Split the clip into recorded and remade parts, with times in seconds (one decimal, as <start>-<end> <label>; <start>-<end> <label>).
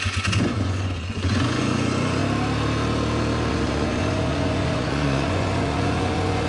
0.0-2.2 remade; 2.2-3.5 recorded; 3.5-6.5 remade